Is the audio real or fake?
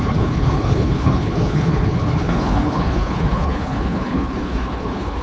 fake